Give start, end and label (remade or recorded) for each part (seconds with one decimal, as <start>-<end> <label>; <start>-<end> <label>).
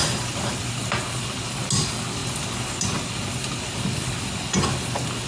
0.0-5.3 recorded